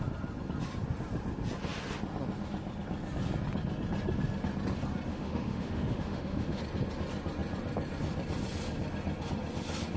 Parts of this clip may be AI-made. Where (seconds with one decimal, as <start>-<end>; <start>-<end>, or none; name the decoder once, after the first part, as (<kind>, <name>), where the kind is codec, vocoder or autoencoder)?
5.1-6.6 (autoencoder, DAC-VAE)